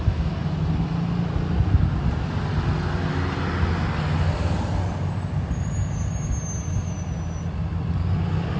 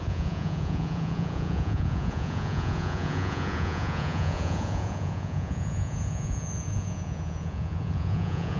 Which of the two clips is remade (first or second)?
second